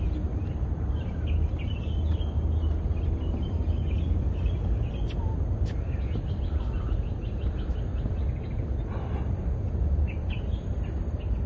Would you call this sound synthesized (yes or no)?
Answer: no